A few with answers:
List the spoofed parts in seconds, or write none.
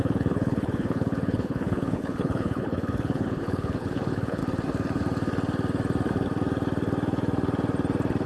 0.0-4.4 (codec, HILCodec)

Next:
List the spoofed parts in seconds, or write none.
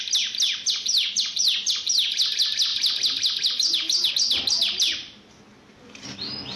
none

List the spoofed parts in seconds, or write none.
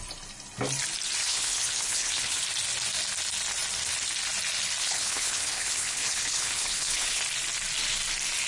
1.2-2.4 (codec, HILCodec); 4.8-7.2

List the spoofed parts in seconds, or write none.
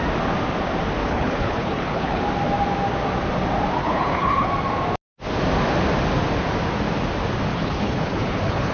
1.0-2.2 (codec, HILCodec); 3.8-4.5; 7.5-8.7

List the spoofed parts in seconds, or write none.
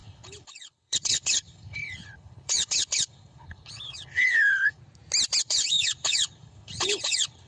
0.0-4.8 (codec, HILCodec); 5.4-7.5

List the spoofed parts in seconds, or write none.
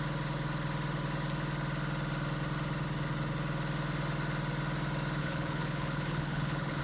5.2-6.8 (codec, HILCodec)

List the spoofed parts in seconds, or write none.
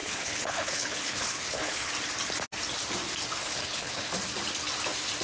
0.0-1.9 (codec, HILCodec); 3.4-4.1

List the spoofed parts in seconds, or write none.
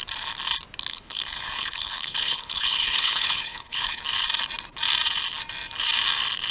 0.9-4.0 (codec, HILCodec)